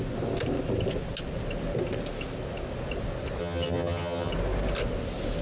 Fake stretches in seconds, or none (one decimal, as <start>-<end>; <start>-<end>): 3.4-4.3